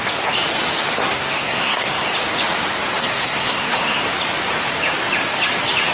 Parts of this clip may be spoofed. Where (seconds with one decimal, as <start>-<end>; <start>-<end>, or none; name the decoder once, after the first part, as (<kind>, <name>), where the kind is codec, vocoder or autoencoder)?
1.0-2.0 (codec, SNAC); 3.0-4.0